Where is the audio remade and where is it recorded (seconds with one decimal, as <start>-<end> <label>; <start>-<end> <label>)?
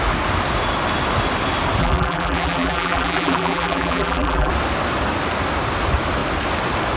0.0-1.8 recorded; 1.8-4.5 remade; 4.5-7.0 recorded